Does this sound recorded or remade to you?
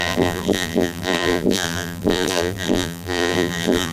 remade